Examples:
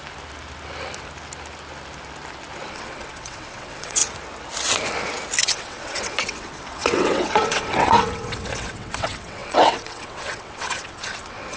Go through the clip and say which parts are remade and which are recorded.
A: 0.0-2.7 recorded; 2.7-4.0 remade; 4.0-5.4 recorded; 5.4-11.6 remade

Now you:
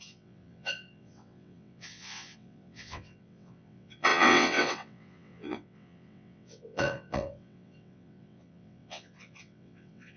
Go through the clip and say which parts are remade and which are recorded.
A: 0.0-10.2 remade